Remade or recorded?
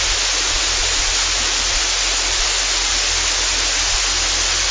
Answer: recorded